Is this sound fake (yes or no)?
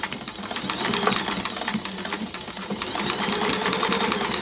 no